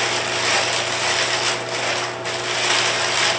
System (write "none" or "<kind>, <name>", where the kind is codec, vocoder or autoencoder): none